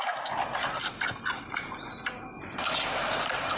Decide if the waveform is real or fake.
real